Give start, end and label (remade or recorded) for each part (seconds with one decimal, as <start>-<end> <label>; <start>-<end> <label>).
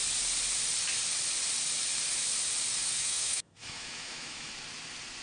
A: 0.0-3.0 recorded; 3.0-4.5 remade; 4.5-5.2 recorded